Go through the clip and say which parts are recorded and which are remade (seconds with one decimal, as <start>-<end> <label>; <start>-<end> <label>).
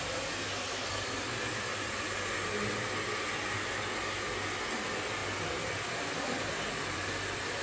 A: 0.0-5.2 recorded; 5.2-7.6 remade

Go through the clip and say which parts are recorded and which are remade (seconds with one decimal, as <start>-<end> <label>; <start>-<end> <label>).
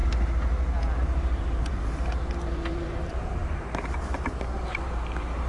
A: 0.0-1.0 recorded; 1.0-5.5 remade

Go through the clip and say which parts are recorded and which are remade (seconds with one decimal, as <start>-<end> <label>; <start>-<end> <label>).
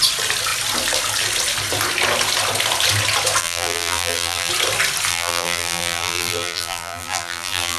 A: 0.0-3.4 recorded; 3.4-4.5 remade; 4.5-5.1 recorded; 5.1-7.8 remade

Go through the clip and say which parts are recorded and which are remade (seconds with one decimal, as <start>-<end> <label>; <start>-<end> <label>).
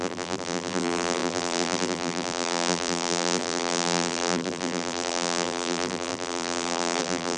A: 0.0-7.4 remade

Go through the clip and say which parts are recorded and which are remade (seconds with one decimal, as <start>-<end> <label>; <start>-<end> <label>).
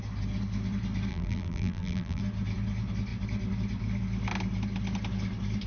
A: 0.0-1.1 recorded; 1.1-2.2 remade; 2.2-5.7 recorded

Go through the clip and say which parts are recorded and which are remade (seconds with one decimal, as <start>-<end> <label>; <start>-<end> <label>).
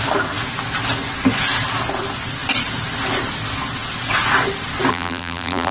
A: 0.0-4.9 recorded; 4.9-5.7 remade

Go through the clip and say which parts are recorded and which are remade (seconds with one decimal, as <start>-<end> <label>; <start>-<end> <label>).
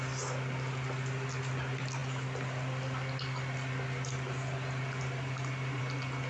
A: 0.0-2.0 recorded; 2.0-5.8 remade; 5.8-6.3 recorded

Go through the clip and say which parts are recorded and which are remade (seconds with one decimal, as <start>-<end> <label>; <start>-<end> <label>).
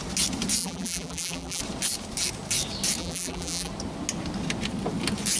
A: 0.0-0.6 recorded; 0.6-1.6 remade; 1.6-3.0 recorded; 3.0-3.7 remade; 3.7-5.4 recorded